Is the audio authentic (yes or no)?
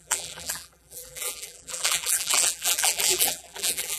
no